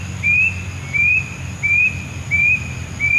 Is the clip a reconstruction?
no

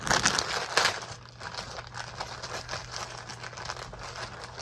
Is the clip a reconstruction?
no